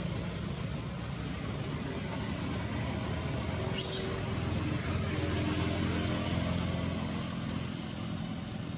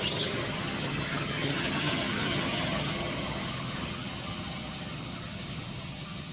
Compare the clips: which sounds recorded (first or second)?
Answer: first